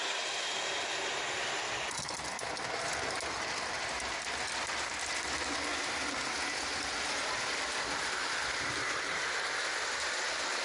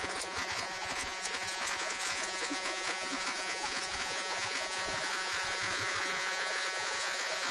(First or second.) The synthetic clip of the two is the second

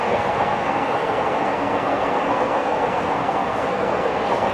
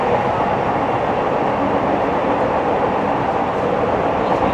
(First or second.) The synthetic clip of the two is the first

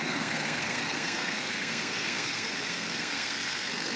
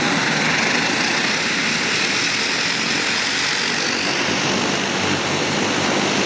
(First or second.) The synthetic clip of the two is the first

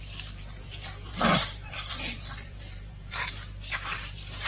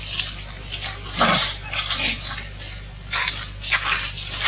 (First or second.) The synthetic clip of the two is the first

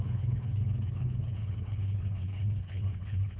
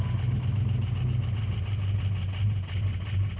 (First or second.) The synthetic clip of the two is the first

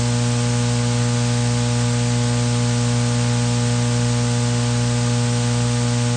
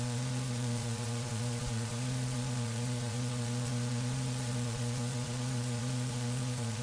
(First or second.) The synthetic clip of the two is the second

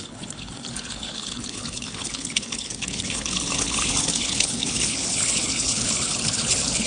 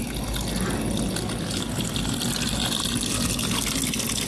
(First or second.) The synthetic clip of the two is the first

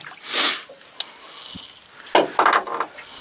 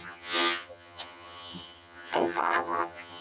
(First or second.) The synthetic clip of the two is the second